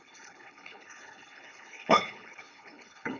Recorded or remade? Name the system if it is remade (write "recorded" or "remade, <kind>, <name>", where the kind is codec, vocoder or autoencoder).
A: remade, codec, HILCodec